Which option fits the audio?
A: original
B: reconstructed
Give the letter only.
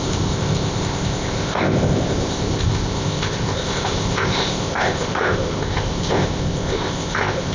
B